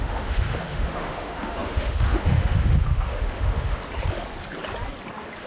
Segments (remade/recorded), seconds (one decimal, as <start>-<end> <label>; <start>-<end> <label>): 0.0-3.8 remade; 3.8-5.5 recorded